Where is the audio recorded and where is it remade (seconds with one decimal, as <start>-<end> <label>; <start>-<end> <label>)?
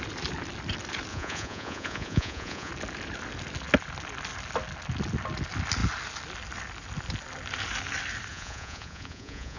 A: 0.0-1.1 recorded; 1.1-2.7 remade; 2.7-8.3 recorded; 8.3-9.6 remade